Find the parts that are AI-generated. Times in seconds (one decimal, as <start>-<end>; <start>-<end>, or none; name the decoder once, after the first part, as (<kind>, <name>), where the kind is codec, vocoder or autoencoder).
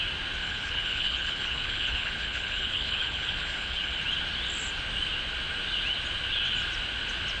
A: 0.4-4.0 (codec, HILCodec)